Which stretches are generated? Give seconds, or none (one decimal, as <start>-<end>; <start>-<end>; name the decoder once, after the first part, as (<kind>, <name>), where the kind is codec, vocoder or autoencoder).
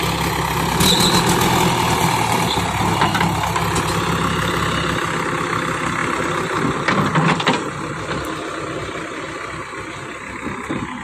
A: 2.0-2.8 (vocoder, BigVGAN v2)